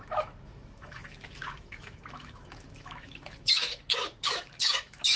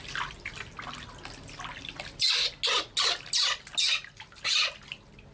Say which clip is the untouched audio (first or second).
second